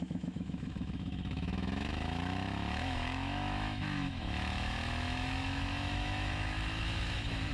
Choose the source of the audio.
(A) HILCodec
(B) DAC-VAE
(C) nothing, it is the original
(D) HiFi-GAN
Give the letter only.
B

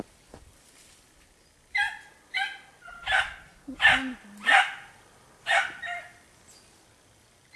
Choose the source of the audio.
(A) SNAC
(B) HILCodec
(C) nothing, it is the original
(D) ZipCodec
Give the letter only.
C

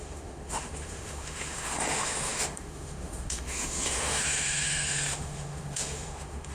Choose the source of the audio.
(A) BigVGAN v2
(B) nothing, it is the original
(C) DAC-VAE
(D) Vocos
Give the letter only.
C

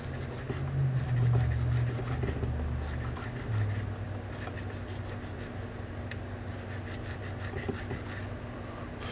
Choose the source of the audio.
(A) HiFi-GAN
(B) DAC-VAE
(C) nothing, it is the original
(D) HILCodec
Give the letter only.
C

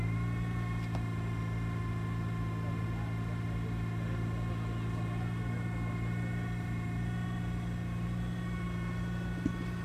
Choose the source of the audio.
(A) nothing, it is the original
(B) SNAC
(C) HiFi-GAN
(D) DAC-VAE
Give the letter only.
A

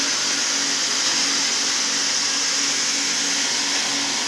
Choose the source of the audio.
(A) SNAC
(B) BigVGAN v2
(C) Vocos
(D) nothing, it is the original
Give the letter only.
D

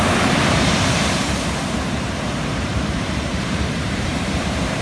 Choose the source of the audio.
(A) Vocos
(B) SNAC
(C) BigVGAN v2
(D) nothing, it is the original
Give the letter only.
C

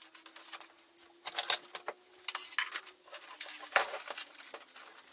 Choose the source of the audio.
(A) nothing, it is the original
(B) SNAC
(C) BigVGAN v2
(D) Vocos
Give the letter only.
A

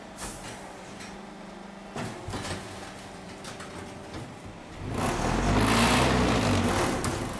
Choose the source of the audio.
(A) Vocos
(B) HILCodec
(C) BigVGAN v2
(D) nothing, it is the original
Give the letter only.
D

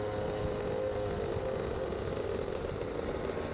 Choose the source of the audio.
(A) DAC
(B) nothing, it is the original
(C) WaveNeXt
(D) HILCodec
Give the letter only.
B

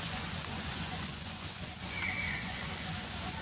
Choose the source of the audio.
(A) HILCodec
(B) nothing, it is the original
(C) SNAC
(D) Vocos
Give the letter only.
D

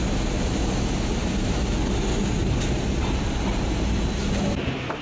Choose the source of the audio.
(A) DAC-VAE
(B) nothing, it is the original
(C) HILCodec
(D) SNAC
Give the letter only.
B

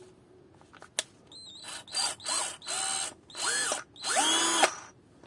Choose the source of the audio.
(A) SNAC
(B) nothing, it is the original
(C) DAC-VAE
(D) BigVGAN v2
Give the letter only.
B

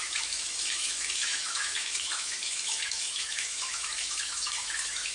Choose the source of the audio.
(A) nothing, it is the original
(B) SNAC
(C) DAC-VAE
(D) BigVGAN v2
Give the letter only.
C